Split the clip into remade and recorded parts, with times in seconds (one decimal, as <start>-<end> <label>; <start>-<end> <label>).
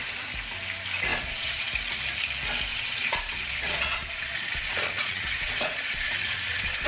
0.0-1.1 recorded; 1.1-1.7 remade; 1.7-2.7 recorded; 2.7-6.9 remade